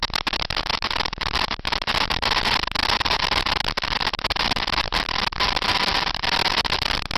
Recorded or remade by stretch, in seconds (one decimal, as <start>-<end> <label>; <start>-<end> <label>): 0.0-7.2 recorded